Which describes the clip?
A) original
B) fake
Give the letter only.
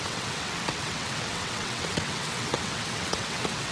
B